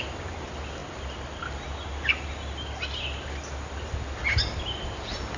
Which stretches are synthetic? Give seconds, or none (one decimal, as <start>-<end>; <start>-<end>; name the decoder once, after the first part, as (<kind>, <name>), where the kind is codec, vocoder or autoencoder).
none

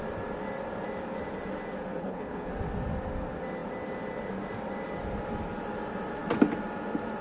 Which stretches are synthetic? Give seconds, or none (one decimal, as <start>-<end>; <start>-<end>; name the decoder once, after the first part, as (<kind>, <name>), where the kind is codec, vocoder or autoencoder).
2.0-2.5 (codec, HILCodec)

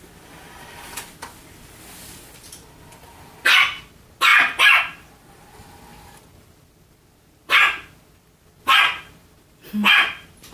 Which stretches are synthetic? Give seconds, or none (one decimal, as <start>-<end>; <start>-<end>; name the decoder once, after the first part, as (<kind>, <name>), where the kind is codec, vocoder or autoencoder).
none

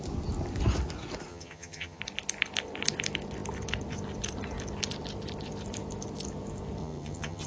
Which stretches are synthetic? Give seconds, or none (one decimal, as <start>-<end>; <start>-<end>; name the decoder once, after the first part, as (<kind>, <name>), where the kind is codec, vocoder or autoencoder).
1.3-2.0 (vocoder, HiFi-GAN); 6.8-7.5

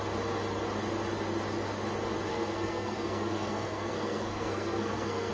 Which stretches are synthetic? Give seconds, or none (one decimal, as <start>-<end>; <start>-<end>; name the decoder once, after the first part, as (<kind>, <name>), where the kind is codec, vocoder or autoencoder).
2.3-5.3 (codec, SNAC)

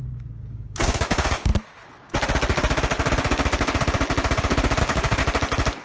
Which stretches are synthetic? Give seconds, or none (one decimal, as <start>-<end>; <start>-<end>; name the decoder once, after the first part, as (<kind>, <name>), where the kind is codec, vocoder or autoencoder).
0.0-1.5 (codec, DAC); 4.8-5.2

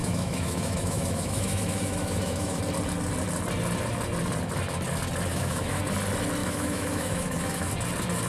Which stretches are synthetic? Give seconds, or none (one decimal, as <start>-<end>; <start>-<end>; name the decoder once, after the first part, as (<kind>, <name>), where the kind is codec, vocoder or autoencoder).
0.0-2.6 (autoencoder, DAC-VAE); 5.3-5.8; 6.4-7.7

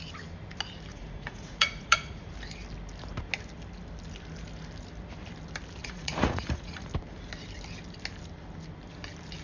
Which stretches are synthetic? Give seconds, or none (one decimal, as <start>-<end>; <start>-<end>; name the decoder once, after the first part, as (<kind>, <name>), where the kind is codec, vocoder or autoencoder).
0.9-2.3 (vocoder, Vocos); 5.8-6.9